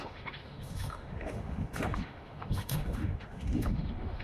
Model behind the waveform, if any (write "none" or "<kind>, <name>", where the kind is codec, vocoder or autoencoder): autoencoder, DAC-VAE